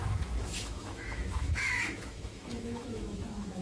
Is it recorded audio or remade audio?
remade